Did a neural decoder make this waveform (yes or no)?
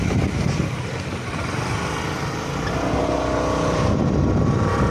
no